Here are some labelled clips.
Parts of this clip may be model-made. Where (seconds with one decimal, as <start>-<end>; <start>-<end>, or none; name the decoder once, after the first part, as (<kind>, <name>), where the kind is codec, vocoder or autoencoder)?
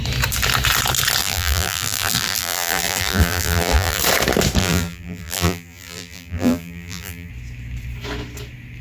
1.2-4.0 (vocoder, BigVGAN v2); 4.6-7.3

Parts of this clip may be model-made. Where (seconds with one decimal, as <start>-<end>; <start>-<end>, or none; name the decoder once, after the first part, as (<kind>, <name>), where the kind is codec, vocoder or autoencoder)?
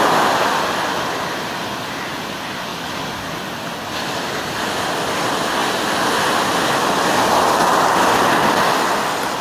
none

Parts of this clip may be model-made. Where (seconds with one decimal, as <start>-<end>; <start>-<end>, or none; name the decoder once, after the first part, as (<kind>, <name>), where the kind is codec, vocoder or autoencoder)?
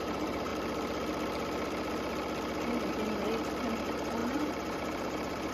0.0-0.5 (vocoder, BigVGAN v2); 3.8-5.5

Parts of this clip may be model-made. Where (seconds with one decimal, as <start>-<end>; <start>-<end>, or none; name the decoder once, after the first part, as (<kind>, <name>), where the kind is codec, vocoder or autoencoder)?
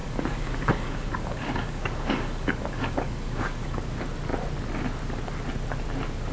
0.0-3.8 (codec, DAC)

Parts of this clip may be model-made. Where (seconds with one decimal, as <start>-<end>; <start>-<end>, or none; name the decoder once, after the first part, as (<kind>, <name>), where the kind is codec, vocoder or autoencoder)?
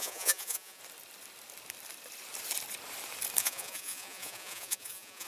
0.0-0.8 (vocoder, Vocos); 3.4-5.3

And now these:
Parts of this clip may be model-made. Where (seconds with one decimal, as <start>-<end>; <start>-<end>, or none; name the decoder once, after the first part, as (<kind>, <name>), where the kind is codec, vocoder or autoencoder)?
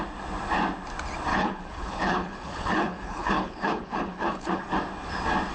1.3-4.6 (codec, HILCodec)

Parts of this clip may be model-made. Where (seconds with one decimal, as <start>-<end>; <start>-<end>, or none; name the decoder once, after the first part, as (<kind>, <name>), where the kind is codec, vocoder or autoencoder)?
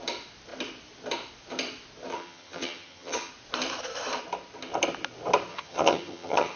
2.1-3.3 (vocoder, HiFi-GAN); 5.5-6.6